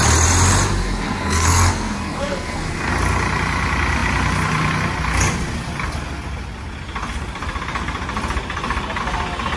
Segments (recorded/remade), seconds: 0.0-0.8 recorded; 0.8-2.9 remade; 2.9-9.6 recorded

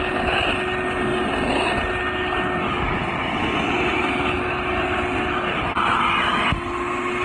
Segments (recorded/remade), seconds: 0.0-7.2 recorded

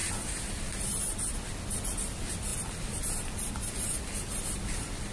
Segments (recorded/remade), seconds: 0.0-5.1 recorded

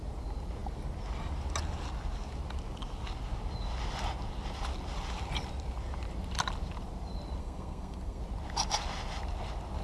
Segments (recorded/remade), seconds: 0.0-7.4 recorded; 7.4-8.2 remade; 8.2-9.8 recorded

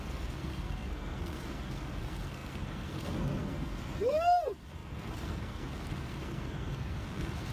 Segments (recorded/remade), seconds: 0.0-7.5 remade

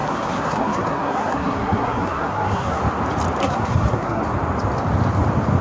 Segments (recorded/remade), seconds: 0.0-2.8 remade; 2.8-3.4 recorded; 3.4-4.2 remade; 4.2-5.6 recorded

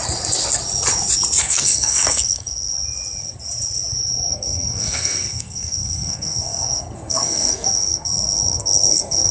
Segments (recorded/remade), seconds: 0.0-1.4 recorded; 1.4-2.7 remade; 2.7-4.3 recorded; 4.3-9.3 remade